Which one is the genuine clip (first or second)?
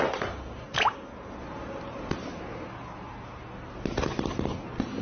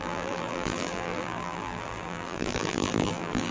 first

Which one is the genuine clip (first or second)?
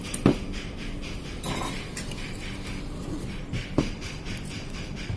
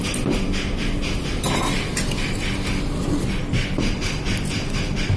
second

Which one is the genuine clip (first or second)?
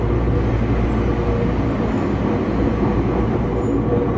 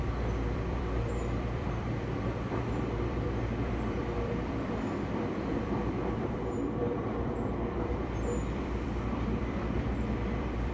first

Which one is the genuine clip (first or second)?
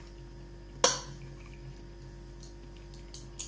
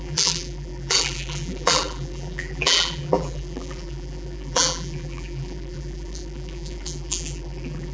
first